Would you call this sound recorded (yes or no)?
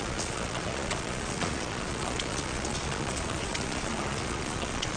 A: no